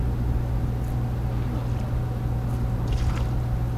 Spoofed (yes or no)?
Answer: no